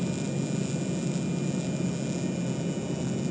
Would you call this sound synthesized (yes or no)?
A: no